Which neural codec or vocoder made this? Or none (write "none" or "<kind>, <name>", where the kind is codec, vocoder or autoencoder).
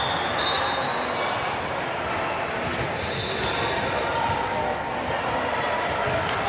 none